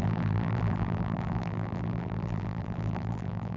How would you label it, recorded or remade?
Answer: remade